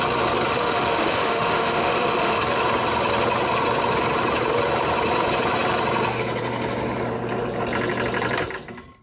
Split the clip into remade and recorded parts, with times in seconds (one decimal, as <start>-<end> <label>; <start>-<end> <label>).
0.0-0.5 recorded; 0.5-2.4 remade; 2.4-9.0 recorded